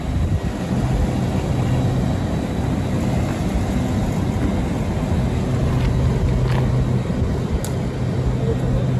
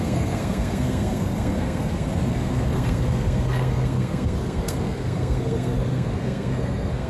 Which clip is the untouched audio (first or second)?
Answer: first